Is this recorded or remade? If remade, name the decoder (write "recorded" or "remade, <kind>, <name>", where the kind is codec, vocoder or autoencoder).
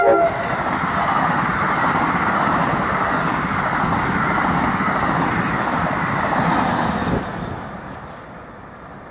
recorded